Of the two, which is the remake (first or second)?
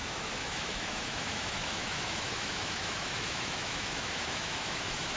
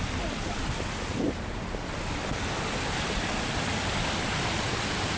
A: first